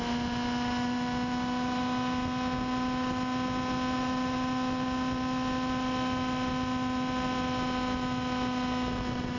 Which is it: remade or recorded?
recorded